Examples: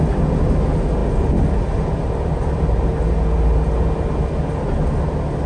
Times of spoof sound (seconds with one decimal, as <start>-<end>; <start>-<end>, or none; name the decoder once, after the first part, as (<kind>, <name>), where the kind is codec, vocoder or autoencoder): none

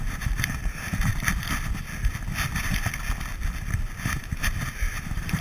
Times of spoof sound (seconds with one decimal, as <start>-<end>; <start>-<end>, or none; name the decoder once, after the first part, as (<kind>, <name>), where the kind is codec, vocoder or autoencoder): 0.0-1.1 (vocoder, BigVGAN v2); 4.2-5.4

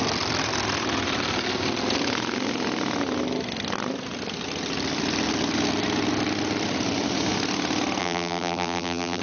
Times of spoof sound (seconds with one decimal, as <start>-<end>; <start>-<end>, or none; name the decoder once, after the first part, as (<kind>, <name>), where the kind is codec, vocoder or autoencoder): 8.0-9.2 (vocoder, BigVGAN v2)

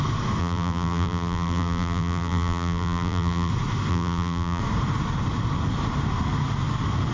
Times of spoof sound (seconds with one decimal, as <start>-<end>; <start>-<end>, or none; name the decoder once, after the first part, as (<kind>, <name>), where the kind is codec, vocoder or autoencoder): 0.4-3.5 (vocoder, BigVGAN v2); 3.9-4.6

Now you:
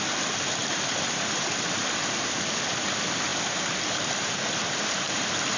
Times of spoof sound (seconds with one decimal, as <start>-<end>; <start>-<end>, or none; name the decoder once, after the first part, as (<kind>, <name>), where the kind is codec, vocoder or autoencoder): 0.6-2.9 (vocoder, BigVGAN v2); 3.3-5.6

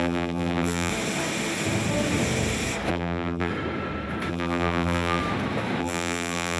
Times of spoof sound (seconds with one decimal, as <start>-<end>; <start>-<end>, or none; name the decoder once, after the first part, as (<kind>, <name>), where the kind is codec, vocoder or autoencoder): 0.0-0.9 (vocoder, BigVGAN v2); 2.9-3.5; 4.3-5.2; 5.8-6.6